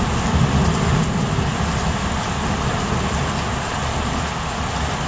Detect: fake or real real